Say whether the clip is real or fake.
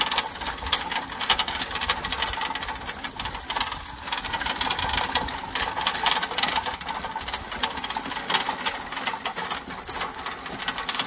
real